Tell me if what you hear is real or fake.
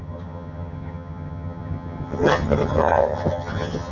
fake